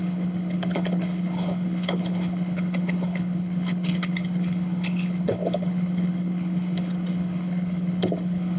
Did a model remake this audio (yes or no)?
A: yes